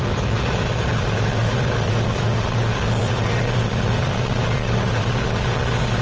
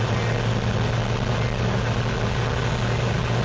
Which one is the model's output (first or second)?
first